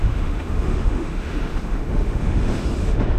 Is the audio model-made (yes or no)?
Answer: yes